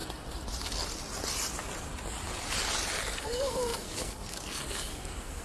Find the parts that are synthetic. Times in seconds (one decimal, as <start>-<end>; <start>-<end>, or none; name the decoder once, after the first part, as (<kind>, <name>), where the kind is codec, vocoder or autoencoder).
3.2-5.4 (codec, SNAC)